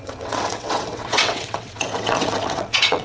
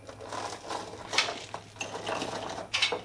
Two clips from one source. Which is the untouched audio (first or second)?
second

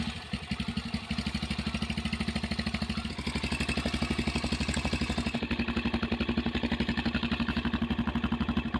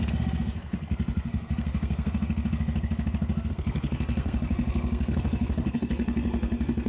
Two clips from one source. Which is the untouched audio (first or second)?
first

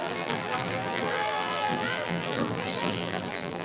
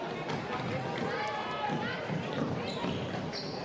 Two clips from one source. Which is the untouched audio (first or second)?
second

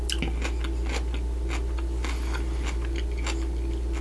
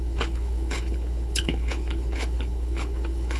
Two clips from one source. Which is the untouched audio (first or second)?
first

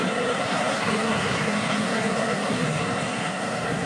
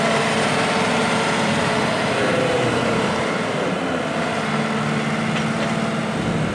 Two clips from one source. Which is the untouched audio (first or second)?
second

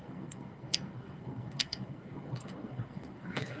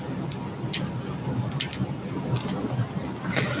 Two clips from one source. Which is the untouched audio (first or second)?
second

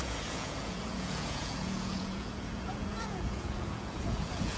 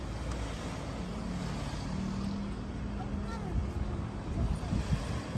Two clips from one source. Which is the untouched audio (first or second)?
second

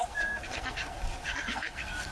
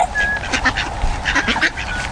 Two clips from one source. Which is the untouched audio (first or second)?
second